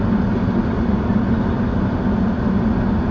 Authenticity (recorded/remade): recorded